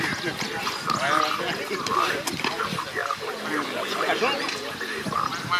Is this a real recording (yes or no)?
yes